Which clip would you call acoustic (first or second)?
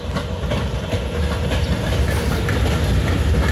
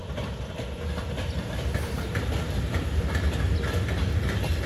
first